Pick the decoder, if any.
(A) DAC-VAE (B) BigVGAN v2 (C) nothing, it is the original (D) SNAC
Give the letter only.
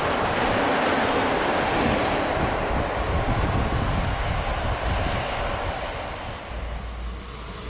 C